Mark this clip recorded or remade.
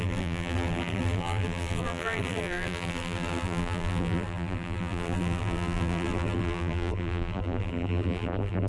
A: remade